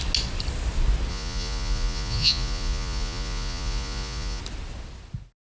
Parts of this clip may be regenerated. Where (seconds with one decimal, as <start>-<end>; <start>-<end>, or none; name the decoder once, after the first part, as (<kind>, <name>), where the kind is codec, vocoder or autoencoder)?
1.1-4.4 (vocoder, Vocos)